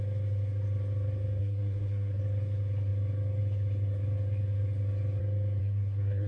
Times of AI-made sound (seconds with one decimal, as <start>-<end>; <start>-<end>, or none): 1.4-2.2; 5.6-6.3